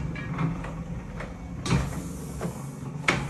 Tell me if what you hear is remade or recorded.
recorded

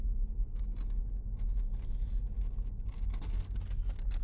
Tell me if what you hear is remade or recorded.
recorded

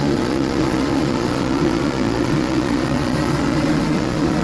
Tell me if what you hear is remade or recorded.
remade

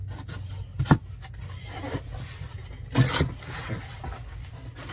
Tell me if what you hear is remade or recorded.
recorded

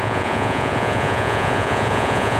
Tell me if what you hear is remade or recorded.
remade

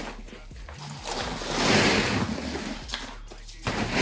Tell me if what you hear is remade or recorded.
recorded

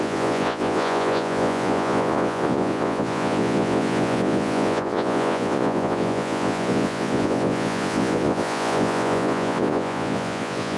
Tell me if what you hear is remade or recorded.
remade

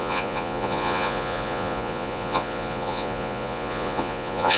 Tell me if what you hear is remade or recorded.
remade